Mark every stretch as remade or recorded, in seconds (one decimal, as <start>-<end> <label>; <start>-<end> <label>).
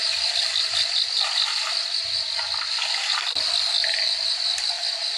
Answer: 0.0-0.5 remade; 0.5-5.2 recorded